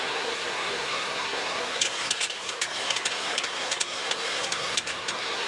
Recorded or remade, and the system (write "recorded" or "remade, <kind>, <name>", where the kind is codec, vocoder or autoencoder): remade, codec, SNAC